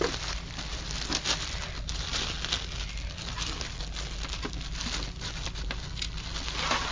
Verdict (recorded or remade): recorded